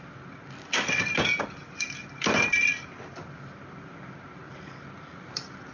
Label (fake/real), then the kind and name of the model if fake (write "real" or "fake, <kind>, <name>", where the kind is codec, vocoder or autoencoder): real